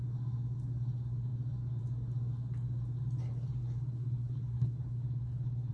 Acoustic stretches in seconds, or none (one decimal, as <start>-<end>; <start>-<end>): 0.0-3.6